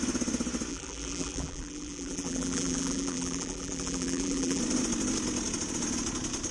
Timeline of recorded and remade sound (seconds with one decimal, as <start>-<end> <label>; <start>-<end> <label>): 0.0-0.7 recorded; 0.7-4.6 remade; 4.6-6.5 recorded